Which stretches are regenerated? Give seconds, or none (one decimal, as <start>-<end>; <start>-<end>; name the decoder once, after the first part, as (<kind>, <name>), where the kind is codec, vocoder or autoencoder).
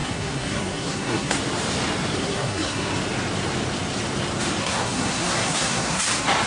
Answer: 0.0-1.4 (codec, SNAC); 2.2-2.9; 4.6-6.0